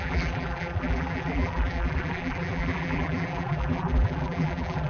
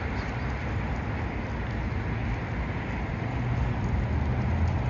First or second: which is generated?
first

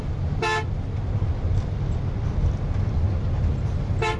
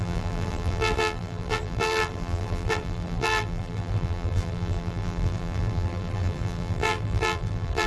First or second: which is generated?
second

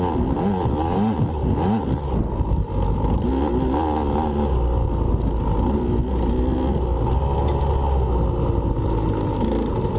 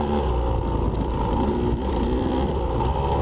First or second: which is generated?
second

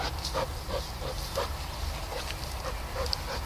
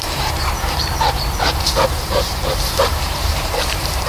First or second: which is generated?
second